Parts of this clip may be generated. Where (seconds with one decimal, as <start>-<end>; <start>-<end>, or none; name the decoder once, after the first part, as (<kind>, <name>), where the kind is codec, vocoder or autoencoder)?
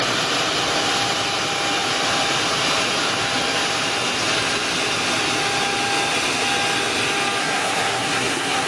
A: 7.4-8.7 (codec, SNAC)